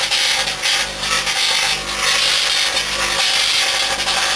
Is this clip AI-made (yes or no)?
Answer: no